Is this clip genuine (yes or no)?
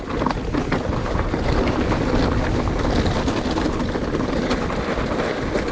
yes